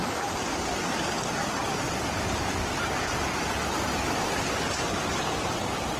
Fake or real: real